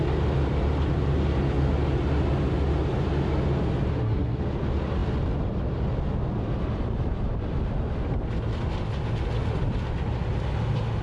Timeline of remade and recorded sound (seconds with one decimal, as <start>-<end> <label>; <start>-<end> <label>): 0.0-3.9 recorded; 3.9-4.4 remade; 4.4-11.0 recorded